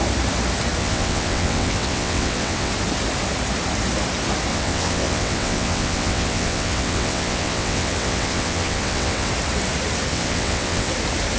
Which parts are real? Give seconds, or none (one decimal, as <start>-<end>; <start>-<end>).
0.0-0.8; 2.7-4.5; 9.3-10.1; 10.9-11.4